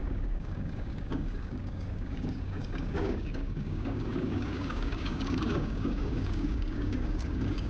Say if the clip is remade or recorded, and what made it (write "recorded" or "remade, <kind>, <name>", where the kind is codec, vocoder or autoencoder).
remade, codec, DAC